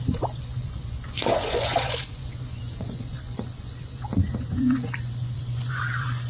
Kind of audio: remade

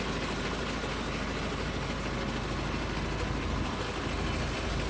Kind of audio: recorded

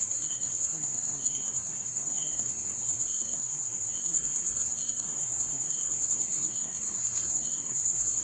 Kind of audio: remade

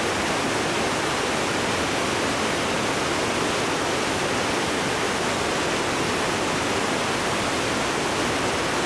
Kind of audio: recorded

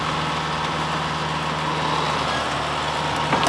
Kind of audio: recorded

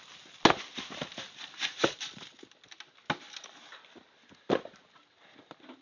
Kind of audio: recorded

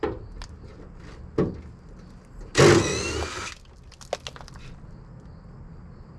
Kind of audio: recorded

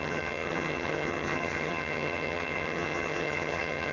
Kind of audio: remade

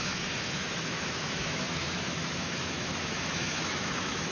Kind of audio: remade